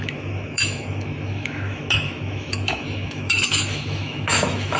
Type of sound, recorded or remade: remade